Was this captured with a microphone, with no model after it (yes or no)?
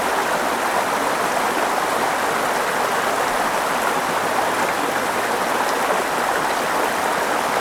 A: yes